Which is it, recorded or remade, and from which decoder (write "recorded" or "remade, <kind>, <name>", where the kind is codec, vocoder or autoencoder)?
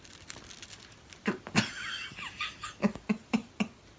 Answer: recorded